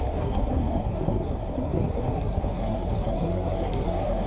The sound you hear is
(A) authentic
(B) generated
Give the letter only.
B